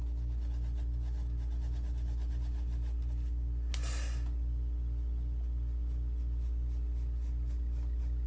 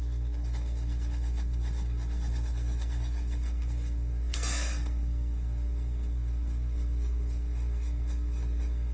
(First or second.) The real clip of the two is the first